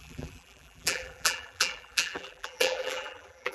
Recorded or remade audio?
remade